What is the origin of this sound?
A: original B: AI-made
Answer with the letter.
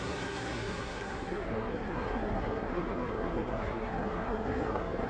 B